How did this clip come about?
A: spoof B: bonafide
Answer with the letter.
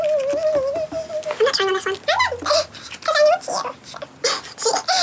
B